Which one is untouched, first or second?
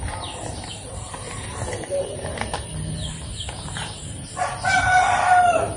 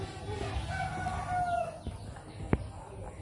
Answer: second